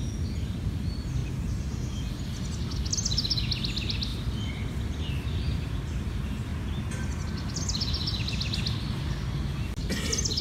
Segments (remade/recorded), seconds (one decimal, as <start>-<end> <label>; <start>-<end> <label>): 0.0-10.4 recorded